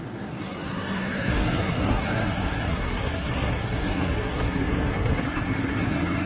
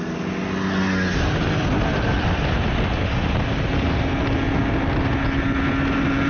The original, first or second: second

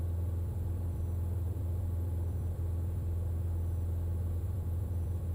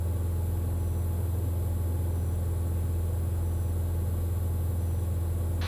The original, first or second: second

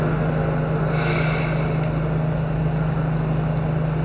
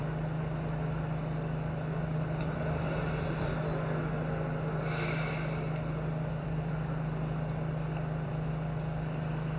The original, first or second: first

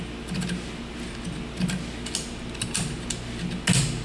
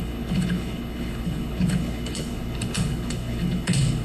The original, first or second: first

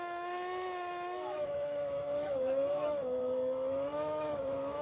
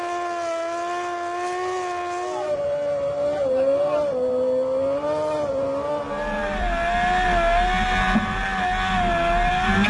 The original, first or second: second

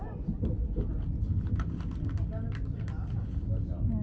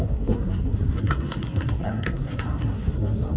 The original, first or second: first